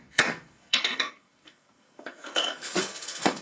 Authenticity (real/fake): fake